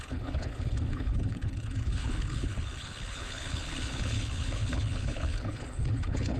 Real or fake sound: fake